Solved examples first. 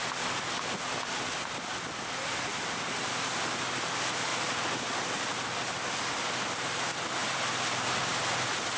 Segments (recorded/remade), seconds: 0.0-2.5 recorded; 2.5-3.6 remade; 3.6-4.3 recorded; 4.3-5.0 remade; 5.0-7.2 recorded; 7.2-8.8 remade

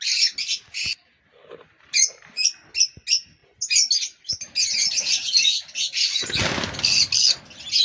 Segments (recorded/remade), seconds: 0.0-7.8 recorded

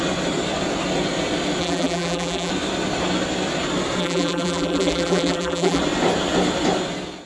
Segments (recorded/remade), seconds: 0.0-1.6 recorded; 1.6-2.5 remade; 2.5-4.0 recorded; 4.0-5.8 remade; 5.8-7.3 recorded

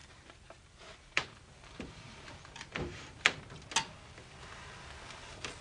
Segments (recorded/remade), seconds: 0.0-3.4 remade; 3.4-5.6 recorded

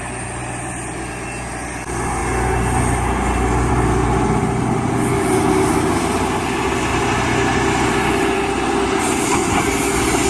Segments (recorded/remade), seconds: 0.0-6.9 recorded; 6.9-9.8 remade; 9.8-10.3 recorded

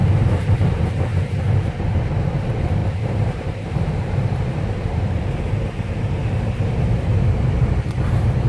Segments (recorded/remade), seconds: 0.0-1.1 remade; 1.1-2.1 recorded; 2.1-6.2 remade; 6.2-6.7 recorded; 6.7-8.5 remade

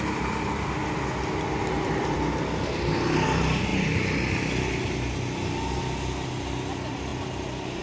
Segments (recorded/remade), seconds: 0.0-3.7 remade; 3.7-5.8 recorded; 5.8-7.1 remade; 7.1-7.8 recorded